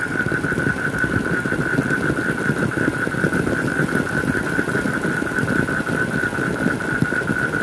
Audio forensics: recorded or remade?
recorded